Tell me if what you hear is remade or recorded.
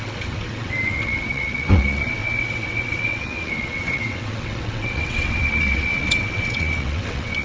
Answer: remade